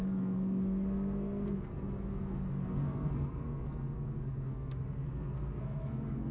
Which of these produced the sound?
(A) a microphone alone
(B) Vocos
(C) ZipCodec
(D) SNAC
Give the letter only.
D